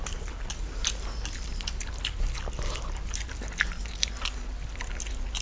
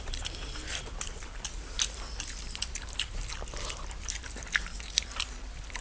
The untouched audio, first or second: first